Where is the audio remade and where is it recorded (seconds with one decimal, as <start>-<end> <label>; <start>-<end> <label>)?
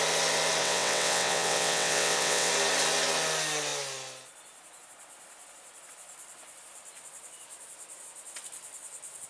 0.0-0.6 recorded; 0.6-2.5 remade; 2.5-9.3 recorded